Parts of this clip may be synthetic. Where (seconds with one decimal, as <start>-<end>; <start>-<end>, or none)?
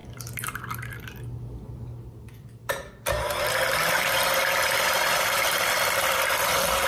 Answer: 2.0-2.6; 3.4-6.9